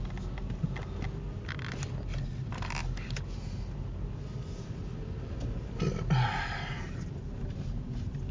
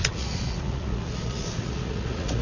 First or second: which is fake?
second